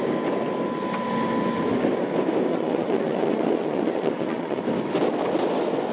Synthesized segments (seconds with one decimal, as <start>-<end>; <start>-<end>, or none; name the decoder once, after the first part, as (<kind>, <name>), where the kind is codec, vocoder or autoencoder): 2.5-4.6 (vocoder, Vocos)